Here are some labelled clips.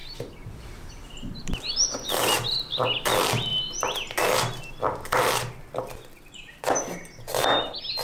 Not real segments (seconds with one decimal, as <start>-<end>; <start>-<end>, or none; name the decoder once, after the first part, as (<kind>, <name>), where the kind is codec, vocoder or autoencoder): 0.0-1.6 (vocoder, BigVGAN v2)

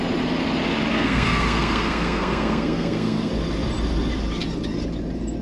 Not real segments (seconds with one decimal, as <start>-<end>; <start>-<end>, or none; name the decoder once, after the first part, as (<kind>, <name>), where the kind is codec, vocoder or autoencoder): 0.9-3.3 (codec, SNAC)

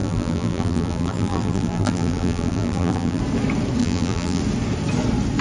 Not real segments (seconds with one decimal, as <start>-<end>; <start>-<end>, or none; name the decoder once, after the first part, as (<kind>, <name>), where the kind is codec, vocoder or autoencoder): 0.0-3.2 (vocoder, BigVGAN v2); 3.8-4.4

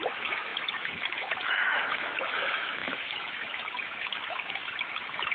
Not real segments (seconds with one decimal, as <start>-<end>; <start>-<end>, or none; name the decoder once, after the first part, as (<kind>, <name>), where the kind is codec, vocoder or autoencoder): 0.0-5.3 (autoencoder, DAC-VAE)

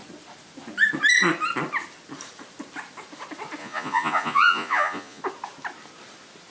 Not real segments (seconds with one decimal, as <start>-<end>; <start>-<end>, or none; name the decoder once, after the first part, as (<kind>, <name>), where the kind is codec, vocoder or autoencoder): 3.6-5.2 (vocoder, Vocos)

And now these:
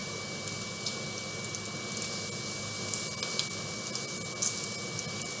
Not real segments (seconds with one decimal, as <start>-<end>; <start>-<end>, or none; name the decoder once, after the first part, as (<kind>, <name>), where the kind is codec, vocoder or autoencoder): none

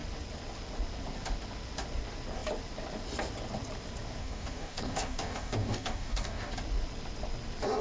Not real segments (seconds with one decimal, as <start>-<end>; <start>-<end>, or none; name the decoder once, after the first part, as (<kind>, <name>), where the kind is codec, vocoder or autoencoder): 4.2-6.5 (codec, DAC)